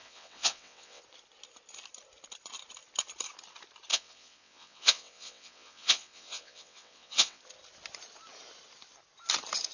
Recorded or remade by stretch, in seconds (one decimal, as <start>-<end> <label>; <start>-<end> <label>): 0.0-1.0 remade; 1.0-3.9 recorded; 3.9-7.4 remade; 7.4-9.7 recorded